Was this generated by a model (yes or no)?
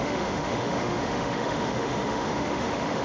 yes